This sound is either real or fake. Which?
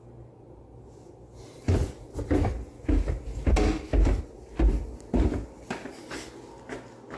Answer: real